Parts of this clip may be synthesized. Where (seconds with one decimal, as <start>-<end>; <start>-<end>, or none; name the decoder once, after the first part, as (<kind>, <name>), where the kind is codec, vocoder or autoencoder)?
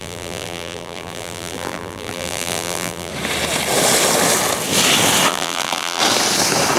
0.0-3.1 (vocoder, BigVGAN v2); 5.3-6.0